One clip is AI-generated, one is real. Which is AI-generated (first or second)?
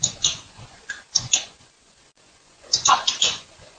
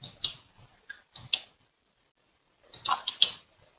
first